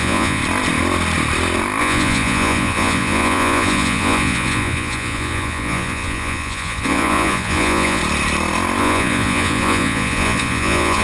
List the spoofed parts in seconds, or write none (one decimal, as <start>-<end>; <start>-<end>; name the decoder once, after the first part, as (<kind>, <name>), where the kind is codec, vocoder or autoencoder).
0.0-0.4 (vocoder, Vocos); 1.8-8.0; 8.8-11.0